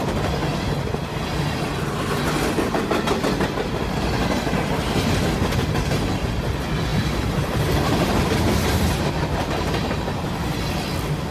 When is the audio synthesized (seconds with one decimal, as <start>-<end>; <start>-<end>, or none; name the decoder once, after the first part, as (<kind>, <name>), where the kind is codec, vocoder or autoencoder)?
6.9-9.1 (vocoder, BigVGAN v2)